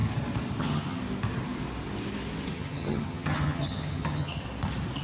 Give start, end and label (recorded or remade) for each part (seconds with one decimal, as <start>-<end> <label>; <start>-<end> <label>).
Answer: 0.0-0.6 recorded; 0.6-1.0 remade; 1.0-2.5 recorded; 2.5-4.4 remade; 4.4-5.0 recorded